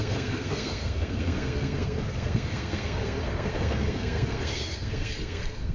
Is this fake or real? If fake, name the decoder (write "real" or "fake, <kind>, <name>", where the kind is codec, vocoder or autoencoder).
fake, codec, SNAC